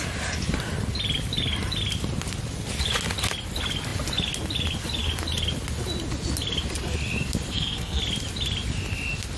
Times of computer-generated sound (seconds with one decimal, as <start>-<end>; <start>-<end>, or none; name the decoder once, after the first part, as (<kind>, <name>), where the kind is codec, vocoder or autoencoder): 7.5-8.0 (codec, SNAC)